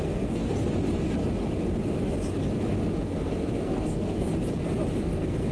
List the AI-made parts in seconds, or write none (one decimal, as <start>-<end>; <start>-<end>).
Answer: 0.0-0.4; 3.0-4.3; 5.0-5.5